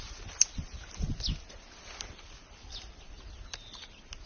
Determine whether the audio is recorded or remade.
recorded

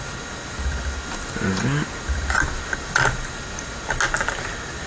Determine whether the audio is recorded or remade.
recorded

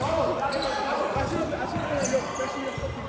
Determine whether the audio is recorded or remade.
recorded